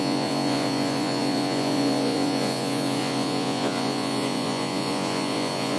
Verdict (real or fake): fake